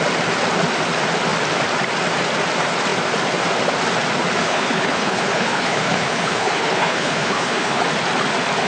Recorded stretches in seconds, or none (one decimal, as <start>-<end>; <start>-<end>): 0.0-4.4; 7.8-8.7